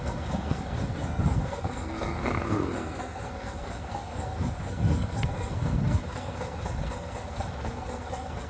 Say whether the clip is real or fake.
fake